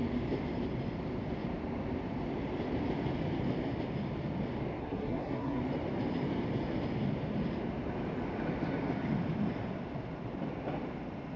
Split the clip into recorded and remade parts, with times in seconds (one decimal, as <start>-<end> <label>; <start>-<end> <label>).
0.0-4.8 recorded; 4.8-5.6 remade; 5.6-11.4 recorded